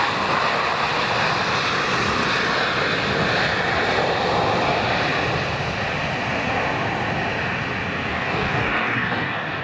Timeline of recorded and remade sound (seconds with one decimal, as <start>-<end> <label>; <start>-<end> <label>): 0.0-8.1 recorded; 8.1-9.6 remade